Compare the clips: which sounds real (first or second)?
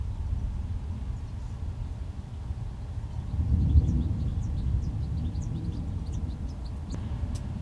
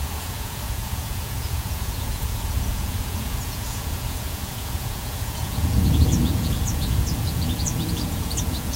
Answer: first